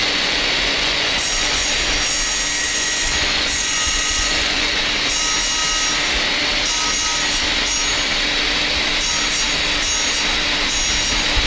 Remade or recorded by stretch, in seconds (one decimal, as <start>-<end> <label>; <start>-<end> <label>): 0.0-1.7 remade; 1.7-2.7 recorded; 2.7-4.8 remade; 4.8-11.5 recorded